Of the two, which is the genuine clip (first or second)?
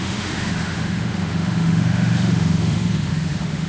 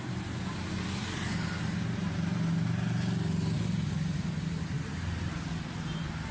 second